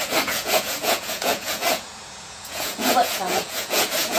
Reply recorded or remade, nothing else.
remade